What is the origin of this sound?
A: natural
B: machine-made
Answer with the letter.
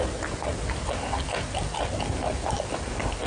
A